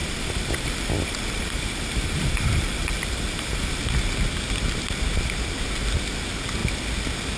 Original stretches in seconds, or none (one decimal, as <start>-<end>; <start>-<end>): 3.8-7.4